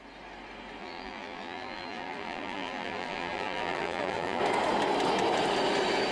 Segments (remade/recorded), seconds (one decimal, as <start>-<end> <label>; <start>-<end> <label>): 0.0-0.8 recorded; 0.8-4.4 remade; 4.4-6.1 recorded